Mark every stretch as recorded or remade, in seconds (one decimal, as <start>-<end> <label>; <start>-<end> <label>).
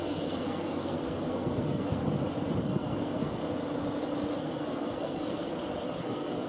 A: 0.0-2.0 remade; 2.0-2.6 recorded; 2.6-3.4 remade; 3.4-4.4 recorded; 4.4-5.5 remade; 5.5-6.0 recorded; 6.0-6.5 remade